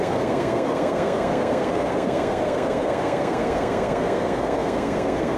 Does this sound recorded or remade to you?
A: remade